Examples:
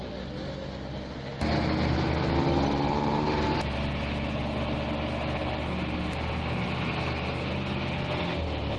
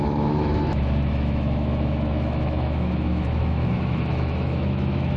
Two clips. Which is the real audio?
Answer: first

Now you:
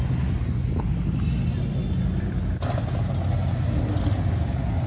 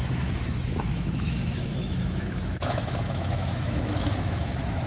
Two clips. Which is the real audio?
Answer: first